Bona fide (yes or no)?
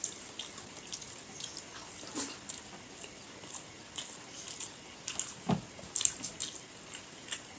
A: yes